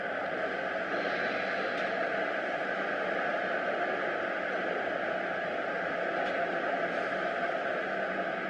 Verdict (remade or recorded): recorded